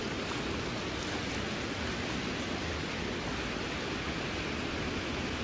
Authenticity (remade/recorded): recorded